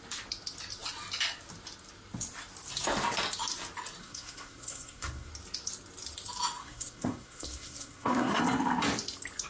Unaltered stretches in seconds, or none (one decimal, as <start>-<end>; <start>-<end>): 0.0-4.0; 5.3-6.6; 8.4-9.5